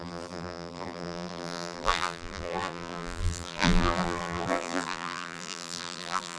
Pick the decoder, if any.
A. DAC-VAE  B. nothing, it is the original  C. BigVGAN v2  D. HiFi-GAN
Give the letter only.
C